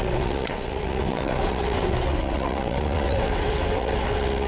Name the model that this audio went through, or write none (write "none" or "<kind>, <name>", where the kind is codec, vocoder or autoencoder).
vocoder, WaveNeXt